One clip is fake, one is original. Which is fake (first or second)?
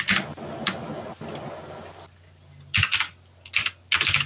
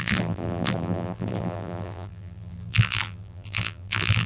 second